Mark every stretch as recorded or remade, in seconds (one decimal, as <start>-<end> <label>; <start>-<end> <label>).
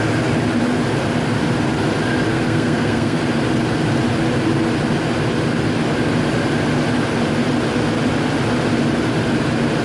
0.0-2.3 recorded; 2.3-3.2 remade; 3.2-9.8 recorded